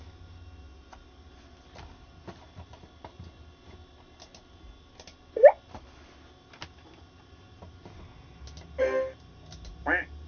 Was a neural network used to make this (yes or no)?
no